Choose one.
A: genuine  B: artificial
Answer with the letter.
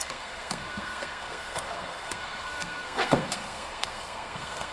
B